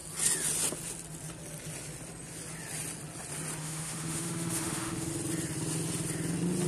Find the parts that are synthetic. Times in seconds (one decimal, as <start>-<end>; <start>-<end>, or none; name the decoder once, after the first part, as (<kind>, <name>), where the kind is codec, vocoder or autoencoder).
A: 3.6-5.1 (autoencoder, DAC-VAE)